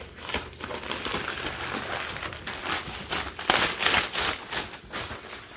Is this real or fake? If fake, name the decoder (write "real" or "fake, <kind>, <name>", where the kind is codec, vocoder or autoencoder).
real